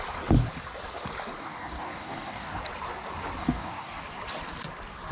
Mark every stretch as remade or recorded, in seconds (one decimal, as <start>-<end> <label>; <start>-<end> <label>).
0.0-1.4 recorded; 1.4-2.6 remade; 2.6-3.4 recorded; 3.4-4.0 remade; 4.0-5.1 recorded